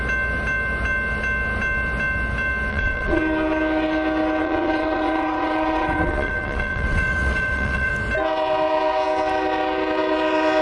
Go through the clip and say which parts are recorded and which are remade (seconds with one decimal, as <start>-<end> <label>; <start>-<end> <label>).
0.0-2.7 recorded; 2.7-3.2 remade; 3.2-4.4 recorded; 4.4-7.9 remade; 7.9-10.6 recorded